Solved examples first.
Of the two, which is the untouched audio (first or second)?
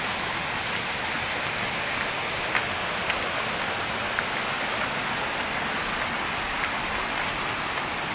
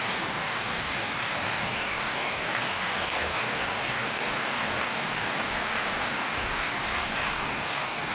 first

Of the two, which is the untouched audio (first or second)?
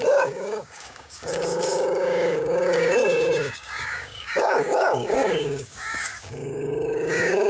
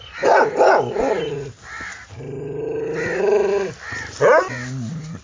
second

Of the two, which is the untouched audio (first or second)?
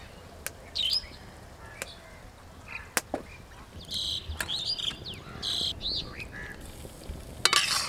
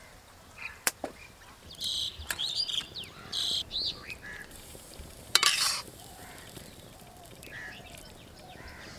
first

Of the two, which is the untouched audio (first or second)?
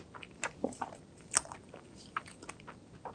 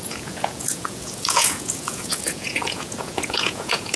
first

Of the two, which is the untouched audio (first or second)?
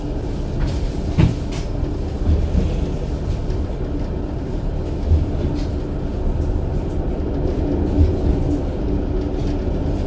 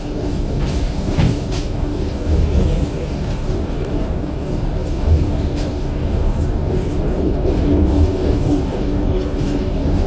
first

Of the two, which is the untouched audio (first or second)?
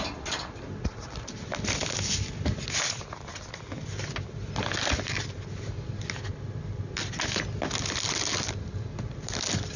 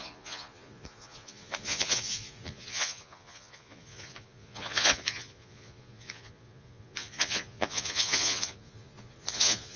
first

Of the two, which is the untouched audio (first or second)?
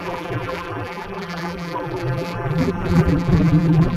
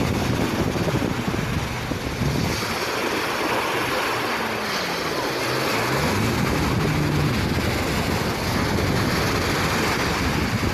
second